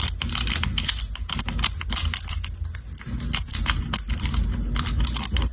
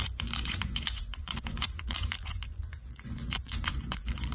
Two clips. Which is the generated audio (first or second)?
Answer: second